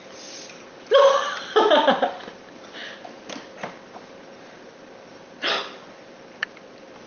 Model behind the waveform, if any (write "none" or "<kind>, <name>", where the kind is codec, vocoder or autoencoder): none